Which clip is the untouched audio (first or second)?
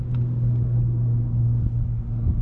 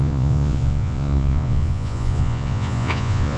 first